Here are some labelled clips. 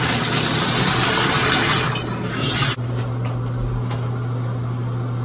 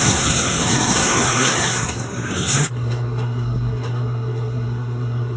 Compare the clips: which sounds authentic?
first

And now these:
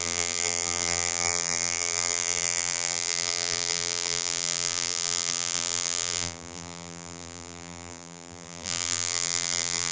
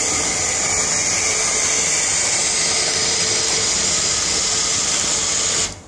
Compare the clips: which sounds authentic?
second